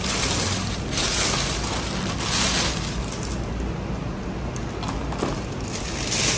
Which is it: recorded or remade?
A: recorded